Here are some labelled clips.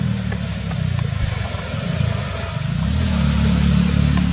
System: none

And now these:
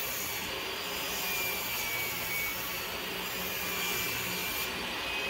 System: none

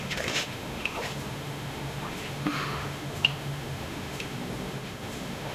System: autoencoder, DAC-VAE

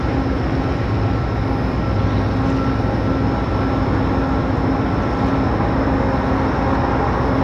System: none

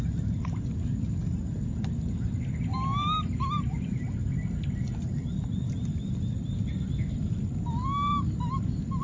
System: none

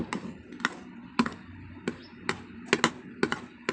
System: none